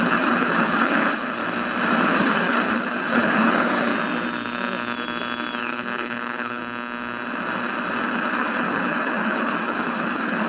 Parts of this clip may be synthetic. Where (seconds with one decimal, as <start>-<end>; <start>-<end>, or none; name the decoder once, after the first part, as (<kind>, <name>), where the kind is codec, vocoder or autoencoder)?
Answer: 0.0-1.4 (codec, HILCodec); 2.2-3.9; 5.6-6.6; 8.3-10.5